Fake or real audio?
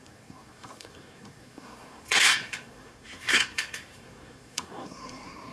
fake